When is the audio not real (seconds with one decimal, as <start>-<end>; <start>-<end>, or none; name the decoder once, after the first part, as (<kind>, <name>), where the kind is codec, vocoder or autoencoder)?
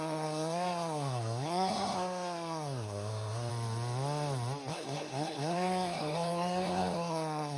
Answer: 0.0-3.5 (codec, SNAC); 4.7-7.6